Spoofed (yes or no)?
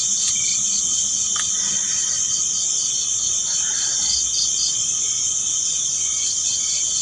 no